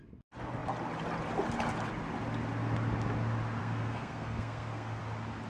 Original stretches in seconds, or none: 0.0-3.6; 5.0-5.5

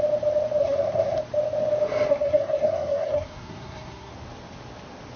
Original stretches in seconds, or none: 0.0-0.6; 1.2-2.1; 4.1-5.2

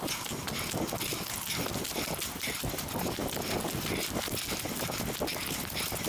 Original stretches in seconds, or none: 0.0-6.1

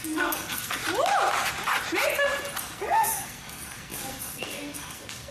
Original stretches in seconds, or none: 0.8-2.6

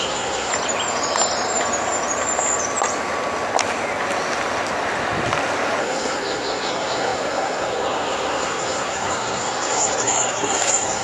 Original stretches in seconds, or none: 0.5-5.8

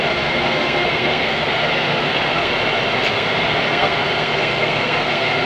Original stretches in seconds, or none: 2.5-3.1